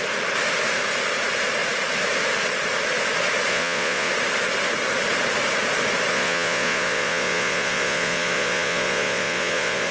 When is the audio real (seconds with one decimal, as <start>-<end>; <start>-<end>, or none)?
0.0-3.5; 4.1-6.1